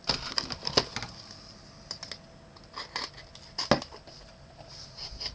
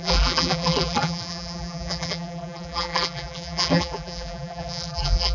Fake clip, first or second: second